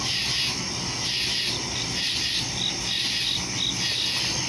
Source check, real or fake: real